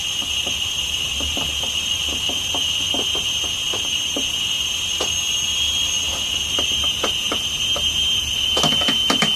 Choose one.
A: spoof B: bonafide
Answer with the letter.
B